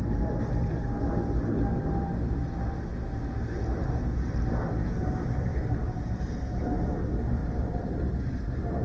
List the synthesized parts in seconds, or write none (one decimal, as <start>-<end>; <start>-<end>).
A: 5.5-6.6; 7.4-8.1